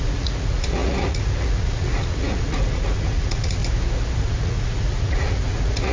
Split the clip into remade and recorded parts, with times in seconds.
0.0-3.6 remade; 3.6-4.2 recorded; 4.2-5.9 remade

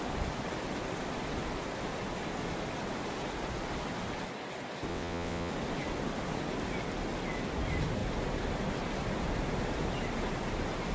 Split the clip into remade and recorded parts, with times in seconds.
0.0-4.9 recorded; 4.9-5.5 remade; 5.5-10.9 recorded